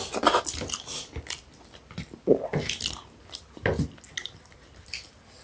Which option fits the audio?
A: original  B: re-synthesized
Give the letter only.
A